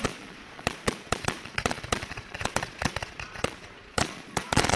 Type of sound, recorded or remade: remade